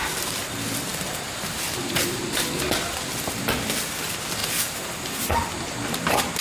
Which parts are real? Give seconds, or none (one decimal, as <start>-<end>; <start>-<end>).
0.0-4.4; 5.4-6.4